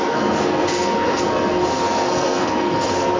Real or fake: fake